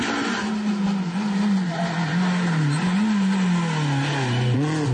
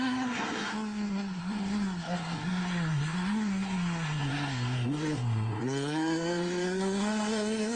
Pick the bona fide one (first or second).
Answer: first